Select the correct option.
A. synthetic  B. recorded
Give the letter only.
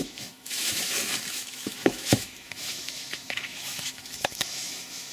A